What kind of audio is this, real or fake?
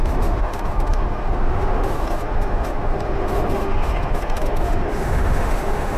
fake